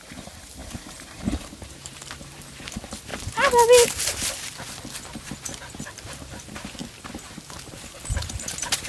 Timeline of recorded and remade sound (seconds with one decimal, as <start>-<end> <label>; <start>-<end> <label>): 0.0-3.1 remade; 3.1-6.1 recorded; 6.1-6.8 remade; 6.8-7.7 recorded; 7.7-8.9 remade